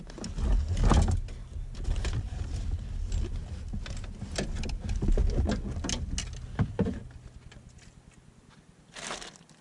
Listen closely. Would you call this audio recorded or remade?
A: recorded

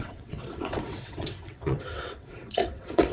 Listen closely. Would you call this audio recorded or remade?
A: remade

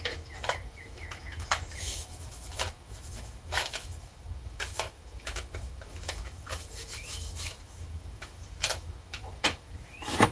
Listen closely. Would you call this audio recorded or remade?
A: remade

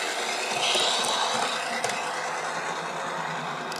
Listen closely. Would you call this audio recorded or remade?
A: recorded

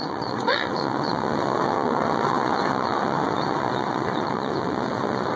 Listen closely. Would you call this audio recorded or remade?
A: remade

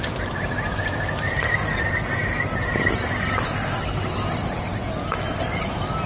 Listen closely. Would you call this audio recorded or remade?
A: recorded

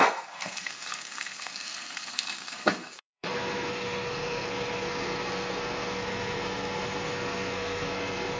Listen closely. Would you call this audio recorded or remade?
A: remade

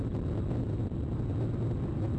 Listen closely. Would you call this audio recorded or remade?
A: recorded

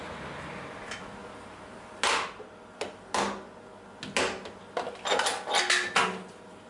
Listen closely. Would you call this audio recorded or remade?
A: recorded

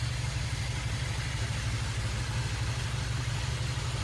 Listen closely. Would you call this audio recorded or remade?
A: recorded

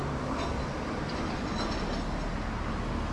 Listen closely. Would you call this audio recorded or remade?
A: recorded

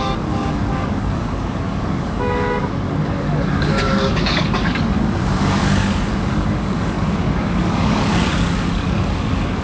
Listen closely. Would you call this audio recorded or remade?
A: remade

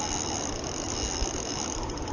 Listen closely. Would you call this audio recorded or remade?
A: recorded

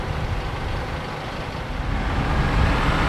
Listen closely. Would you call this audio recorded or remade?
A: recorded